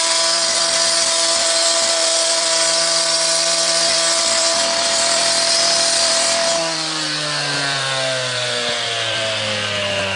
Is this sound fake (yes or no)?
yes